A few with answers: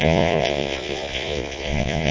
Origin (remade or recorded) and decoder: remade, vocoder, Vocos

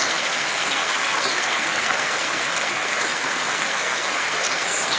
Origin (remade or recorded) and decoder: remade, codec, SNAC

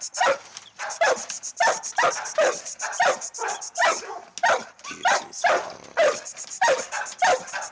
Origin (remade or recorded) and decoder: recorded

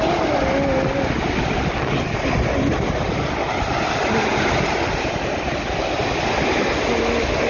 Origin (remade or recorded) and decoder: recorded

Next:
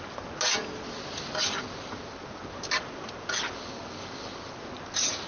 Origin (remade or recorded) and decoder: recorded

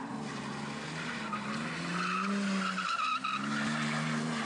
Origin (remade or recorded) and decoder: recorded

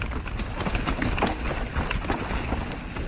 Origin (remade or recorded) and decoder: recorded